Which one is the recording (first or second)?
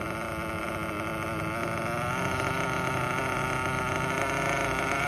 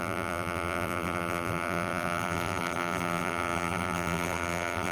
first